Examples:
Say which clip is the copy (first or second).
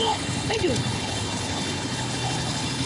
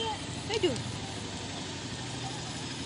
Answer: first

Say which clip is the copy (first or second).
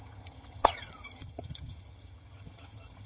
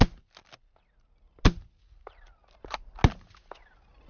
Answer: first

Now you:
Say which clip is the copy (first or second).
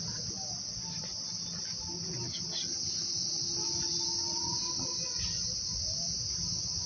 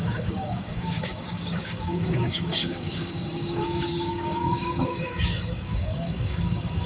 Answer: second